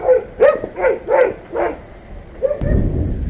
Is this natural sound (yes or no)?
yes